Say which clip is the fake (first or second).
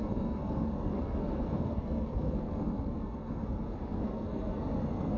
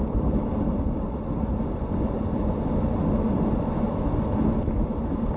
first